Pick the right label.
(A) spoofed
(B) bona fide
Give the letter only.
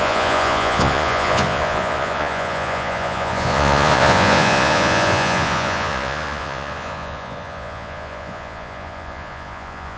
A